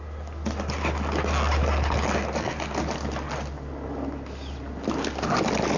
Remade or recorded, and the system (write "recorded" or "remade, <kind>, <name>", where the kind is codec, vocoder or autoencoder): recorded